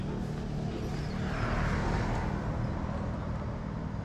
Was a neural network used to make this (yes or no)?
no